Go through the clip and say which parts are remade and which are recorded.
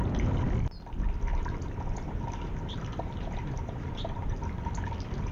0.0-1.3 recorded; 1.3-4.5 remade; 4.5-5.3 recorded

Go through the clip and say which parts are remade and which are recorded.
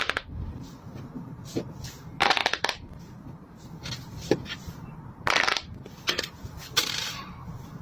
0.0-2.4 remade; 2.4-3.0 recorded; 3.0-7.8 remade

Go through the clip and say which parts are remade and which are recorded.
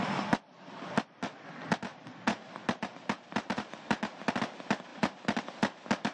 0.0-1.9 recorded; 1.9-4.3 remade; 4.3-4.9 recorded; 4.9-5.4 remade; 5.4-6.1 recorded